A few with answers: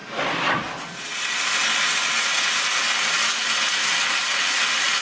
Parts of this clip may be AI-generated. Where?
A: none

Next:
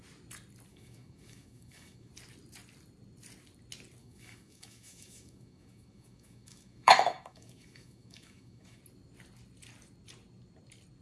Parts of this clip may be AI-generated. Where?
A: 0.7-2.1 (autoencoder, DAC-VAE); 4.0-8.8

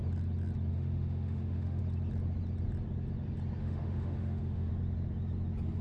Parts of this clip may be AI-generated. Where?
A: 0.7-1.8 (autoencoder, DAC-VAE); 3.6-4.7

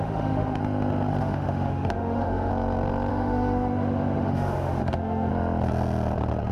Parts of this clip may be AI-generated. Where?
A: 0.0-0.6 (autoencoder, DAC-VAE); 1.2-2.5; 3.1-5.3

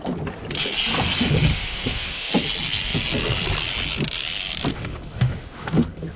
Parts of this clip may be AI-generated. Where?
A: 1.5-2.3 (autoencoder, DAC-VAE); 4.7-6.2